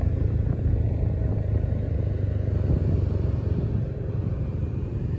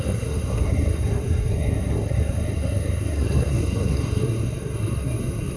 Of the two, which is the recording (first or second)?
first